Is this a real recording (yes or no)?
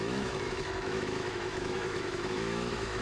no